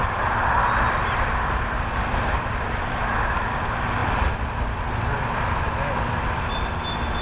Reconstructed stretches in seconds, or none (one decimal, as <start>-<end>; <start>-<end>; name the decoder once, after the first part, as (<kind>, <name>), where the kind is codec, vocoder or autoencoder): 0.0-7.2 (vocoder, BigVGAN v2)